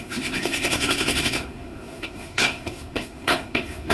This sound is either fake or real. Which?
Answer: fake